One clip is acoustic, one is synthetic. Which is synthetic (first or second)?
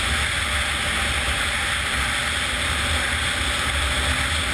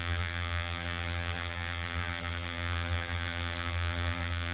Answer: second